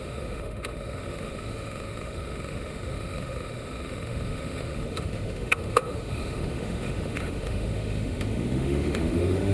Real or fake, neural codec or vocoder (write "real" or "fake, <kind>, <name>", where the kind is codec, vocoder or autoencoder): fake, autoencoder, DAC-VAE